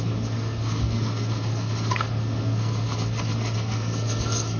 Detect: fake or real fake